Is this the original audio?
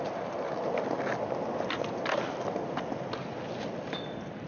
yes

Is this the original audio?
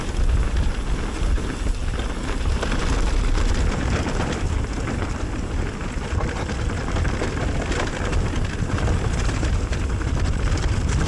yes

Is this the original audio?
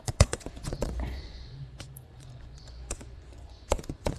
no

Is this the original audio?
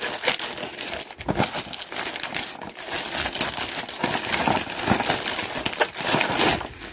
yes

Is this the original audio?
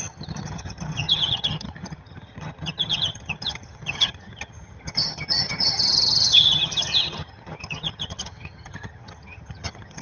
no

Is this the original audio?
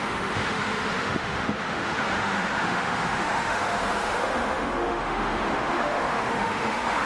no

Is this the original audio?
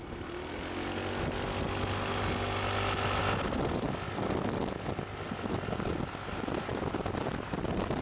yes